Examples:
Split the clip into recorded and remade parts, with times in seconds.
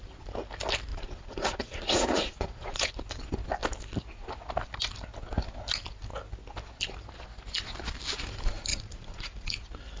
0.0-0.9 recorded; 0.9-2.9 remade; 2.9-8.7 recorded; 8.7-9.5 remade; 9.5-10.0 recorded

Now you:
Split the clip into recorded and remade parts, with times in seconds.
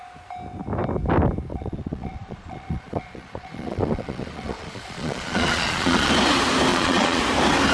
0.0-1.5 recorded; 1.5-6.1 remade; 6.1-6.7 recorded; 6.7-7.2 remade; 7.2-7.7 recorded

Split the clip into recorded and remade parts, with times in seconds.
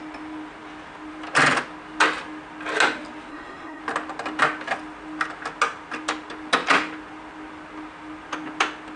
0.0-3.3 recorded; 3.3-3.8 remade; 3.8-9.0 recorded